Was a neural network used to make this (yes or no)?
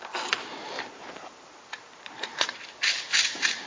yes